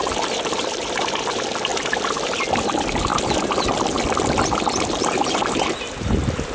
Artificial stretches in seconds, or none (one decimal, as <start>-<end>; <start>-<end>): 0.0-1.2; 1.7-2.6